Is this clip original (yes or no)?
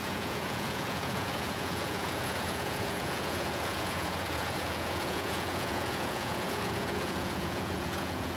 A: no